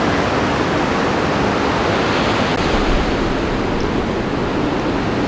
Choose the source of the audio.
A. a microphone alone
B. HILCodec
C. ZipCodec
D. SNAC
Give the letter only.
A